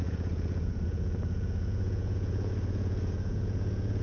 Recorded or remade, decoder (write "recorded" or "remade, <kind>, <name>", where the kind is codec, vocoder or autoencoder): remade, vocoder, Vocos